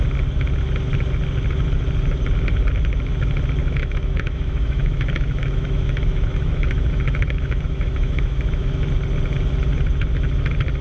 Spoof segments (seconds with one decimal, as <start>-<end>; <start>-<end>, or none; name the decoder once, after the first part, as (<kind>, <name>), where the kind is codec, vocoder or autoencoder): 3.6-8.7 (autoencoder, DAC-VAE)